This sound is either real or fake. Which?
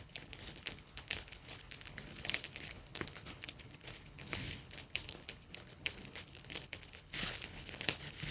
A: fake